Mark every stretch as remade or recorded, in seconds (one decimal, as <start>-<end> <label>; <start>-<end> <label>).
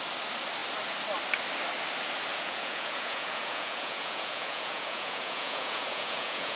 0.0-2.3 recorded; 2.3-6.6 remade